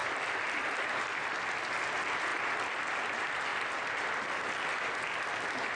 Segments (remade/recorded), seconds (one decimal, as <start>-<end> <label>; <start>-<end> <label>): 0.0-1.3 remade; 1.3-2.3 recorded; 2.3-2.9 remade; 2.9-5.8 recorded